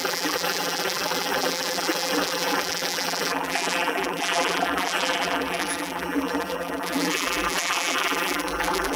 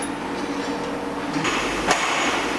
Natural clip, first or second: second